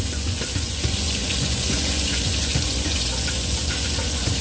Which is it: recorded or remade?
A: remade